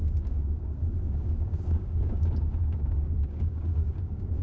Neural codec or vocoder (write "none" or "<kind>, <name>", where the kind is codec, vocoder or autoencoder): codec, DAC